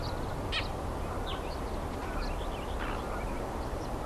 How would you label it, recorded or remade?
recorded